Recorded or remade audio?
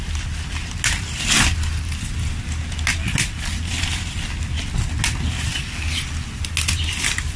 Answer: recorded